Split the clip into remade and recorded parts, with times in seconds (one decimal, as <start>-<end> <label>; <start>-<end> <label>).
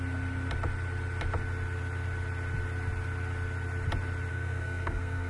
0.0-4.3 recorded; 4.3-5.3 remade